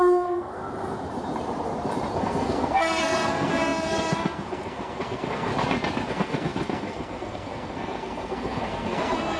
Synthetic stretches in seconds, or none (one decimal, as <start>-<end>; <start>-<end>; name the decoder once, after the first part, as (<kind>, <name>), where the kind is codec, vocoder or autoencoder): 0.0-0.6 (codec, SNAC); 2.2-5.5; 6.1-9.4